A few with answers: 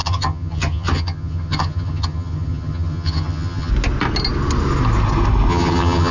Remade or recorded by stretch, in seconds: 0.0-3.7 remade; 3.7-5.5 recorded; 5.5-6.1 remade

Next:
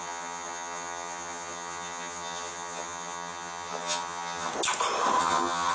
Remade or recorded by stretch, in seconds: 0.0-4.5 remade; 4.5-5.2 recorded; 5.2-5.7 remade

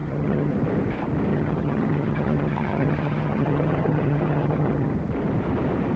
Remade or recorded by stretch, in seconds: 0.0-0.5 remade; 0.5-1.3 recorded; 1.3-4.9 remade; 4.9-6.0 recorded

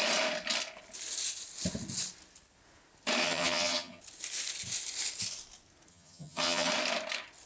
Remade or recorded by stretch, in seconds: 0.0-3.2 recorded; 3.2-4.0 remade; 4.0-5.9 recorded; 5.9-6.7 remade; 6.7-7.5 recorded

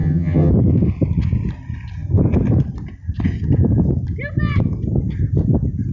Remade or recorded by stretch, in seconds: 0.0-0.5 remade; 0.5-5.9 recorded